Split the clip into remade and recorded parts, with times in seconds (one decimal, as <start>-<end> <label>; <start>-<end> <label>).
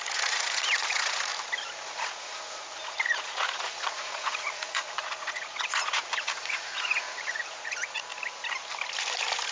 0.0-1.3 remade; 1.3-1.9 recorded; 1.9-8.1 remade; 8.1-9.5 recorded